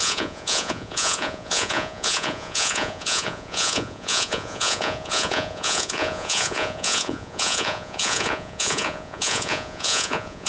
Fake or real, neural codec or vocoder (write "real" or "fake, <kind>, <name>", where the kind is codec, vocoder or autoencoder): fake, vocoder, Vocos